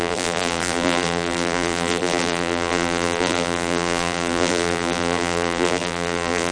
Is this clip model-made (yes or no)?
yes